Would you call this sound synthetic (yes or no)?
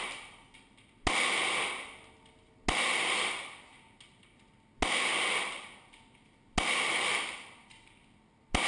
no